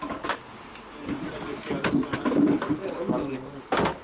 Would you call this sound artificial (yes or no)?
no